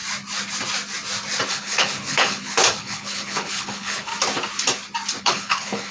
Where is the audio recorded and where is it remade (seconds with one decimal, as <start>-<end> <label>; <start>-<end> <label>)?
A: 0.0-1.5 recorded; 1.5-4.1 remade; 4.1-5.2 recorded; 5.2-5.9 remade